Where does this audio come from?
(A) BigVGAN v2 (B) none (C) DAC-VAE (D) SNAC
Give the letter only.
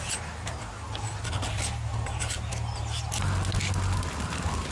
B